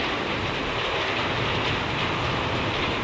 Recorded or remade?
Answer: remade